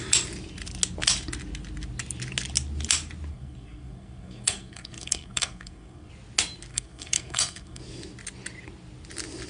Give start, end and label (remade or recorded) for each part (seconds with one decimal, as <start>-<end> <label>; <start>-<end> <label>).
0.0-3.3 recorded; 3.3-6.1 remade; 6.1-6.7 recorded; 6.7-7.8 remade; 7.8-9.5 recorded